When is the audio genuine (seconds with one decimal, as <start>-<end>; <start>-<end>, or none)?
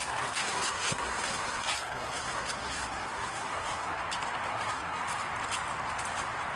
4.0-4.5; 5.0-6.6